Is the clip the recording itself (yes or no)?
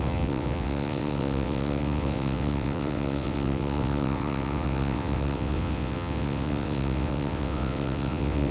no